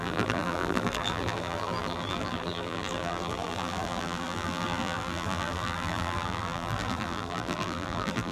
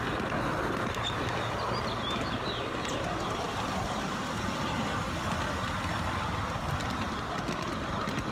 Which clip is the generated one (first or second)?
first